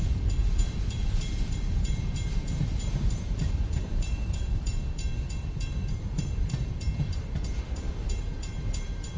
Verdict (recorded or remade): remade